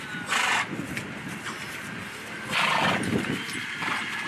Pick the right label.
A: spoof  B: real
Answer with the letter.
B